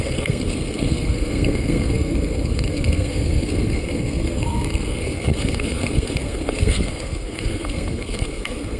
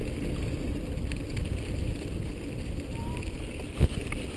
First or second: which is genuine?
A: second